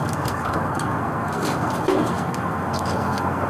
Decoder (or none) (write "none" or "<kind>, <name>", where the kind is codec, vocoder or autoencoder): codec, SNAC